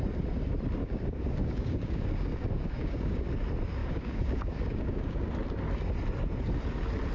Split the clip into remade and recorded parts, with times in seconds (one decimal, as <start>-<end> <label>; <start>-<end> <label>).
0.0-0.8 recorded; 0.8-3.3 remade; 3.3-3.8 recorded; 3.8-5.3 remade; 5.3-7.1 recorded